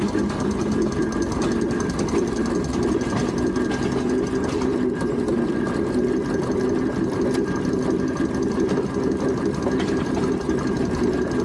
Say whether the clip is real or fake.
real